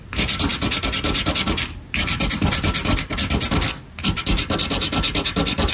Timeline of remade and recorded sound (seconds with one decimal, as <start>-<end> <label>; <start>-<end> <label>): 0.0-5.7 recorded